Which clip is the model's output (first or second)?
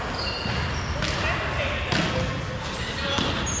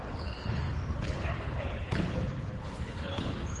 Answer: second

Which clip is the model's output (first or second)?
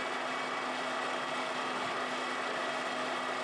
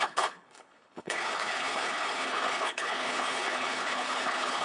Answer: second